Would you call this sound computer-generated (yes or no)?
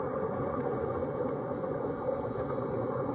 yes